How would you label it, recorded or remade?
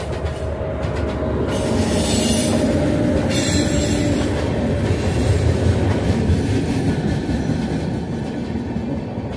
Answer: recorded